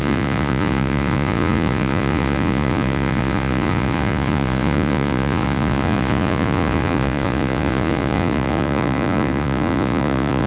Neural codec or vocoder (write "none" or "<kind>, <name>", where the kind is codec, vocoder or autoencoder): vocoder, Vocos